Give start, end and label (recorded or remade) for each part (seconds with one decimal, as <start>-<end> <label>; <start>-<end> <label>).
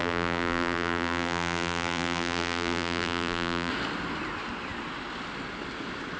0.0-3.7 remade; 3.7-6.2 recorded